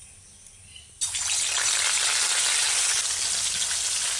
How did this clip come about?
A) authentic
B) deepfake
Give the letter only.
A